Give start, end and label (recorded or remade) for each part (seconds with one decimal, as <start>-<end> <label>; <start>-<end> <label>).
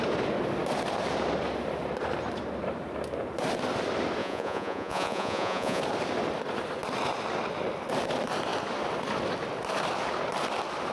0.0-4.2 recorded; 4.2-5.8 remade; 5.8-10.9 recorded